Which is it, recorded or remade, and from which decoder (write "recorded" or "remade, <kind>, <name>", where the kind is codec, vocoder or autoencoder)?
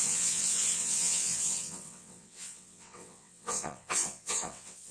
remade, vocoder, WaveNeXt